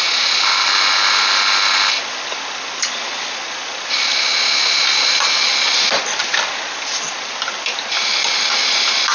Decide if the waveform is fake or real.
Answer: real